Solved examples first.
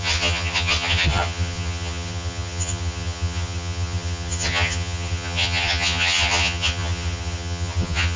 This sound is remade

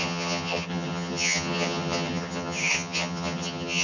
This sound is remade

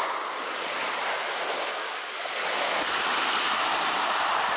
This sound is recorded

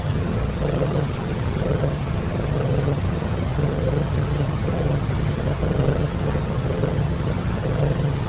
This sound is remade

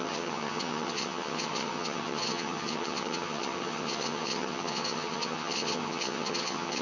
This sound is remade